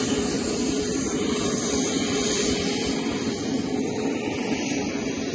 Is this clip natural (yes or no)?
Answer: yes